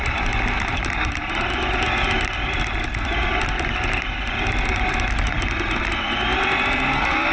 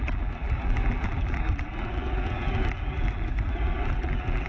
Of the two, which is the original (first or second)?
first